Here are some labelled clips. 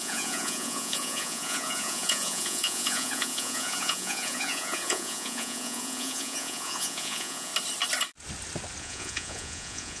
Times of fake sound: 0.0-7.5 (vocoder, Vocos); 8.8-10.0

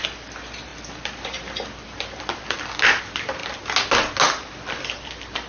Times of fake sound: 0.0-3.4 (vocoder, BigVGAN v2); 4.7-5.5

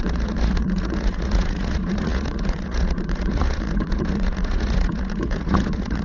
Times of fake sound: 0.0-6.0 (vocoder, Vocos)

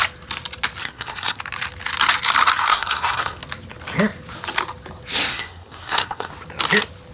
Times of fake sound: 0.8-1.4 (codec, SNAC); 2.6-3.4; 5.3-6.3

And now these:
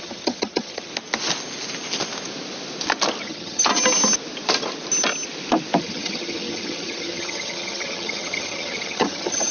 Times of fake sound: 0.0-0.9 (vocoder, HiFi-GAN); 3.2-3.7; 5.8-9.5

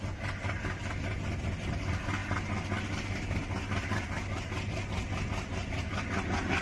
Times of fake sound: none

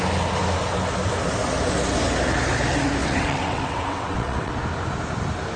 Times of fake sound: 3.0-4.5 (vocoder, WaveNeXt)